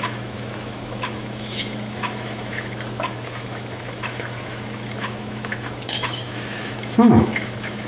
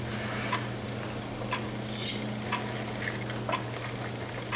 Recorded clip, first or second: second